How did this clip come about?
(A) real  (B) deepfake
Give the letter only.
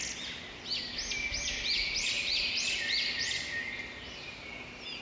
A